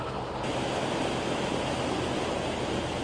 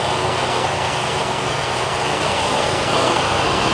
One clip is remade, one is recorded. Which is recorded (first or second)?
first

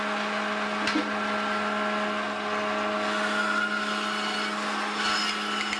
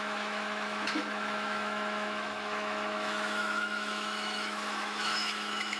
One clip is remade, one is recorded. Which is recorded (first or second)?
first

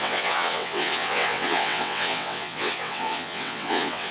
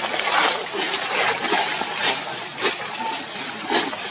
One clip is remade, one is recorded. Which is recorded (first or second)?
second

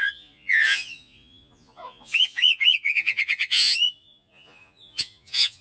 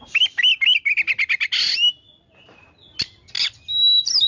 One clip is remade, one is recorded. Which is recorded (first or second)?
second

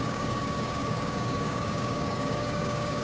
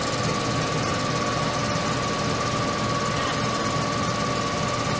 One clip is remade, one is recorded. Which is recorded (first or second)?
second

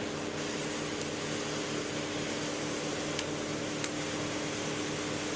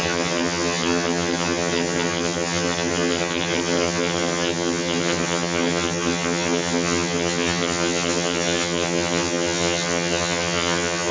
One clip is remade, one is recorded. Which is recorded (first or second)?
first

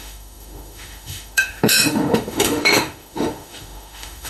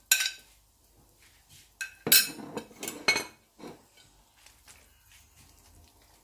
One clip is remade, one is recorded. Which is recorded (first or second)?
second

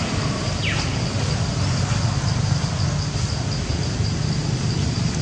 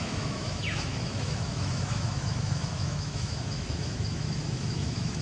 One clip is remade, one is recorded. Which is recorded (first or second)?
first